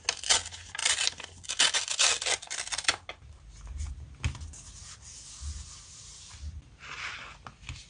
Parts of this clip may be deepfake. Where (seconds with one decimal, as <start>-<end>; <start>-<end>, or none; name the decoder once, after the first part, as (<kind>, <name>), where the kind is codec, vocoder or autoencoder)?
none